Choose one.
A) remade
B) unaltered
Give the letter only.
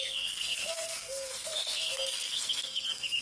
A